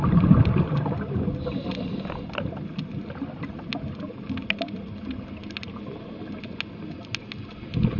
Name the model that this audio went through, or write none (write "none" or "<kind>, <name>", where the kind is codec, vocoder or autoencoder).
none